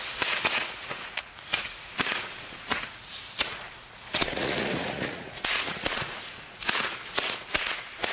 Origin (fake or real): fake